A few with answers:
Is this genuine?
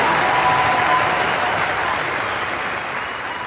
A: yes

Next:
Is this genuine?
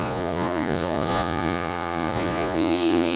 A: no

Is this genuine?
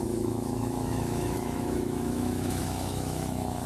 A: no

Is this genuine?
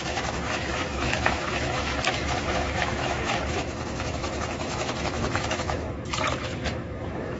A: no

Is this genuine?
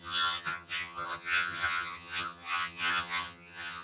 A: no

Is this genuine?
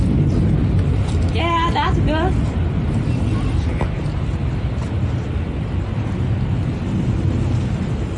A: yes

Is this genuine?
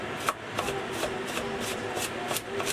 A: yes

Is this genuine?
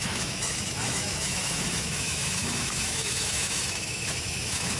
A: no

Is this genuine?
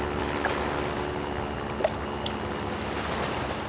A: yes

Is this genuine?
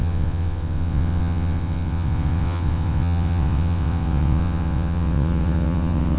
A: no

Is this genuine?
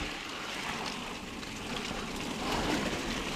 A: yes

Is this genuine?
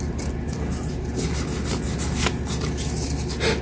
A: yes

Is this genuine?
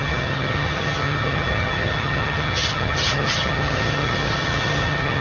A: no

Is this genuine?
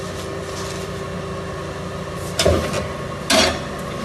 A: yes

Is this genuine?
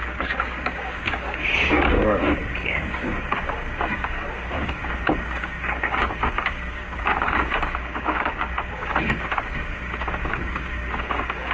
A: no